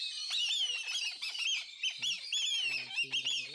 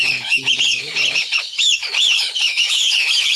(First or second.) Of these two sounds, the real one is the first